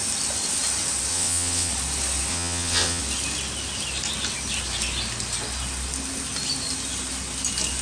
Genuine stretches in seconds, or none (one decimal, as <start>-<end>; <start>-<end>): 0.0-1.1; 1.7-2.3; 3.0-7.8